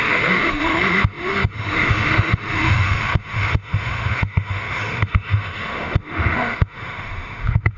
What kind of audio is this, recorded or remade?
remade